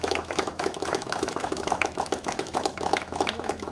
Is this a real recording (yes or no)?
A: no